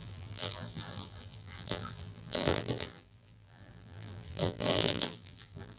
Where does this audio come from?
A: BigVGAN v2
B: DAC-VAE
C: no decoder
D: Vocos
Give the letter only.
A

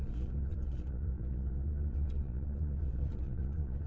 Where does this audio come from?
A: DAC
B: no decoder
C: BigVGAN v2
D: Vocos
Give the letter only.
D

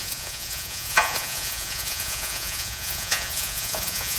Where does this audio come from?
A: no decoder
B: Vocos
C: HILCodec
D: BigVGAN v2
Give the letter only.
B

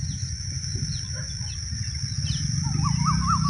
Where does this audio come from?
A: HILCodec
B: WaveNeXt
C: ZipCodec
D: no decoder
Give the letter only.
D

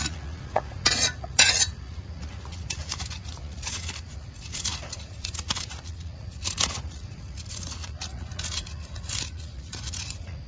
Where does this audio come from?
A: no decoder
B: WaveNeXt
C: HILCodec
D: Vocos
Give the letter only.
D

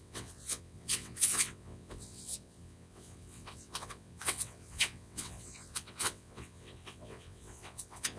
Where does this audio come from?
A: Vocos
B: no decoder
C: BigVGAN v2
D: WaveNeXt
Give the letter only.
D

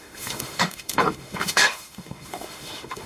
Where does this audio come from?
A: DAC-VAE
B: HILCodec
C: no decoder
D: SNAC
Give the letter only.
A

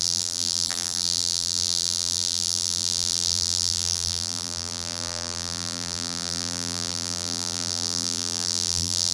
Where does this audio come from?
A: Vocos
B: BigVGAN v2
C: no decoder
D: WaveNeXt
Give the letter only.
B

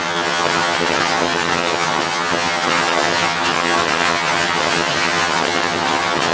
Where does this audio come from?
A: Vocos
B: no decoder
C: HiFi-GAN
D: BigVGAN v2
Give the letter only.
C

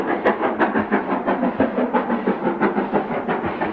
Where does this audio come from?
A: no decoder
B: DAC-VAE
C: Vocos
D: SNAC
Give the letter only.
A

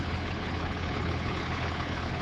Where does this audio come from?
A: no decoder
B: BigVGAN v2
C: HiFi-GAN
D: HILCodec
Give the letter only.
D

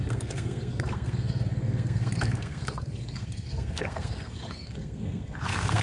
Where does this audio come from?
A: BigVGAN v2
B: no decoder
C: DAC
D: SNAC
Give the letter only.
D